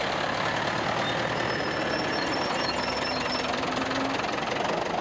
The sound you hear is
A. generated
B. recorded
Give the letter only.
B